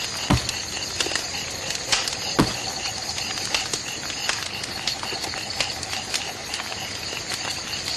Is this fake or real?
real